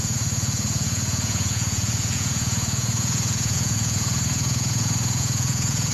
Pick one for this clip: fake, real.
fake